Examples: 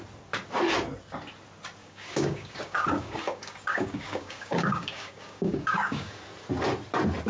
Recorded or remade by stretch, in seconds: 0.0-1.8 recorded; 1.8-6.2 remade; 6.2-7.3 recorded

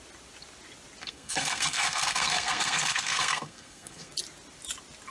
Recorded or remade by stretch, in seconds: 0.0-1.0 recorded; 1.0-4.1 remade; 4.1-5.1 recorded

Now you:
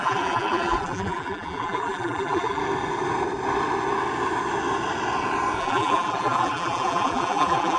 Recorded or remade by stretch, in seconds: 0.0-2.6 remade; 2.6-5.6 recorded; 5.6-7.8 remade